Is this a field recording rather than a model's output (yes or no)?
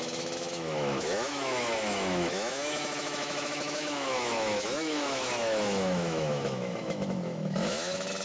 no